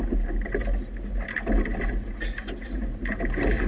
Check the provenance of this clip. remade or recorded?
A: recorded